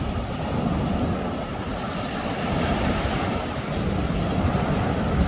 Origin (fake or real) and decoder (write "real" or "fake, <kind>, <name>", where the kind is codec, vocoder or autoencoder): real